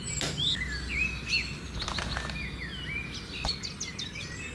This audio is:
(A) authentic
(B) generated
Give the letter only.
A